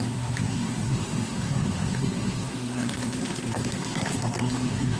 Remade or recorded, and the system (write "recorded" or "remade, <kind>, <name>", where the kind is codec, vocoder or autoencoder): remade, codec, SNAC